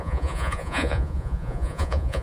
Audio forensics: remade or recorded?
remade